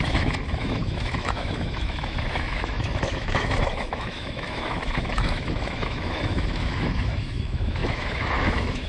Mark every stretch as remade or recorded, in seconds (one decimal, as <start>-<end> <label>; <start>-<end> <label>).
0.0-8.9 remade